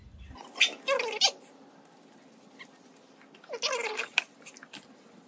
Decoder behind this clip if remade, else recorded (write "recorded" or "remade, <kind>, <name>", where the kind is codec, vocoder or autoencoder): recorded